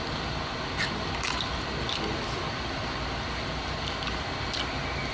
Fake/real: real